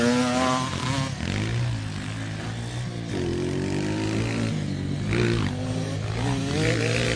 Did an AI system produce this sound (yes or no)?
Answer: no